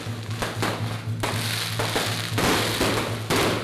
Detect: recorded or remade recorded